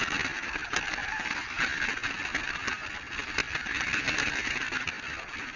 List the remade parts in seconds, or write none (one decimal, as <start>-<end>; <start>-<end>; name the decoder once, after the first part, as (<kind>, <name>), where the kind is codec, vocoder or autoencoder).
none